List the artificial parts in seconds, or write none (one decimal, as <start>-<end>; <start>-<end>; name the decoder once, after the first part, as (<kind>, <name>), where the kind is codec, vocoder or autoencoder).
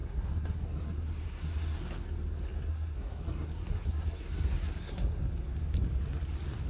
0.0-2.0 (codec, SNAC); 2.7-5.2